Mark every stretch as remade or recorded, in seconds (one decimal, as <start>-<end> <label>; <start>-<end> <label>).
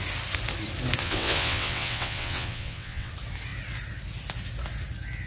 0.0-1.0 recorded; 1.0-3.1 remade; 3.1-5.3 recorded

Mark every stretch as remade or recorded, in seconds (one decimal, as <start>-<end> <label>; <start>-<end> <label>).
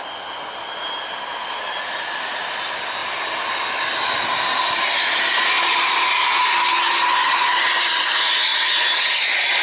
0.0-9.6 recorded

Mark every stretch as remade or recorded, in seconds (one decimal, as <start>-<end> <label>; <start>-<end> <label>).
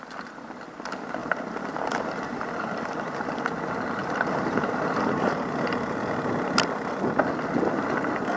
0.0-1.2 recorded; 1.2-3.4 remade; 3.4-4.0 recorded; 4.0-6.3 remade; 6.3-8.4 recorded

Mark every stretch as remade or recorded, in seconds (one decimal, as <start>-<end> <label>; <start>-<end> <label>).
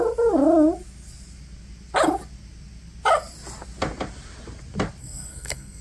0.0-5.0 recorded; 5.0-5.8 remade